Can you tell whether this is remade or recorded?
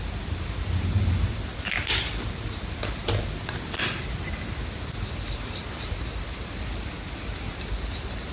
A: recorded